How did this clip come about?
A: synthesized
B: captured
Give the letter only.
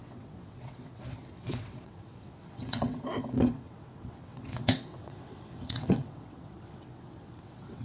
A